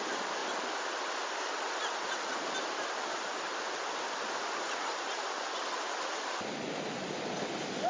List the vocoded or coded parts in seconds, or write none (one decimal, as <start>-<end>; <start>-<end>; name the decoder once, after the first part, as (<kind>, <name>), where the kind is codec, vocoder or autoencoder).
none